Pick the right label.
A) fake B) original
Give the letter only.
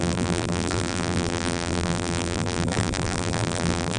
A